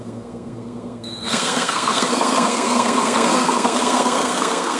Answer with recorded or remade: remade